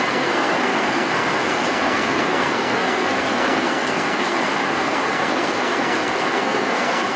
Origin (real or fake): fake